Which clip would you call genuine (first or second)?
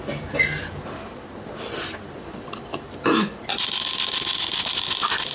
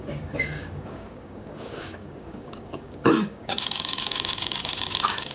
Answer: first